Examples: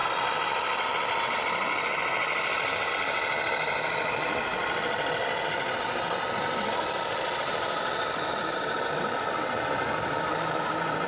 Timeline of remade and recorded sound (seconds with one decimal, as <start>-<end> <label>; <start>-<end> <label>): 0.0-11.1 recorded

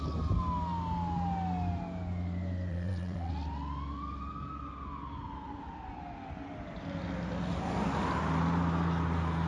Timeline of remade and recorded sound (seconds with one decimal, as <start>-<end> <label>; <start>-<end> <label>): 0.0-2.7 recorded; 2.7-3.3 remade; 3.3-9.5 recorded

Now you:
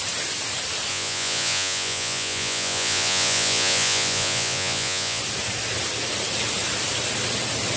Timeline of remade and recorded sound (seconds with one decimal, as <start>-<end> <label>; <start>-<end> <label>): 0.0-0.9 recorded; 0.9-5.2 remade; 5.2-7.8 recorded

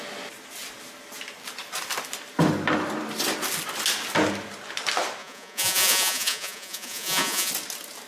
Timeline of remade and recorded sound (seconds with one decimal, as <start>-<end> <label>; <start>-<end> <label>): 0.0-5.2 recorded; 5.2-7.5 remade; 7.5-8.1 recorded

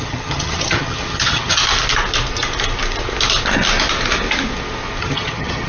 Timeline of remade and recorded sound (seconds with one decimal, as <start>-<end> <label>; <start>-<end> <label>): 0.0-1.6 remade; 1.6-5.0 recorded; 5.0-5.7 remade

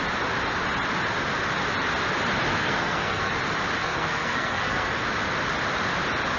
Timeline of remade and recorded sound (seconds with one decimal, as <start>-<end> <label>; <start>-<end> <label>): 0.0-2.5 recorded; 2.5-3.3 remade; 3.3-3.8 recorded; 3.8-5.0 remade; 5.0-6.4 recorded